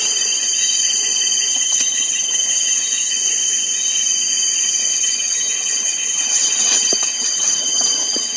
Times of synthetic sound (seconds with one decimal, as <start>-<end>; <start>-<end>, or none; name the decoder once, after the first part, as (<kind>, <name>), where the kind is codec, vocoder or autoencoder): 1.5-3.1 (vocoder, HiFi-GAN); 4.9-8.4